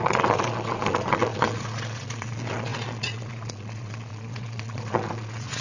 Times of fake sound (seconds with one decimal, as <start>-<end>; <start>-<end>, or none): 0.0-5.6